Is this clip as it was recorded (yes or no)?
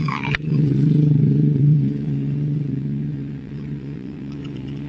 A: no